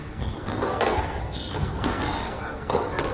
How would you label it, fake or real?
fake